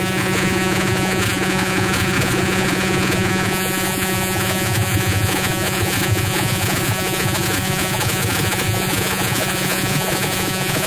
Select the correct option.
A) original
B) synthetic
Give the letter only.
B